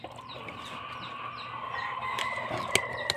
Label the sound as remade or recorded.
recorded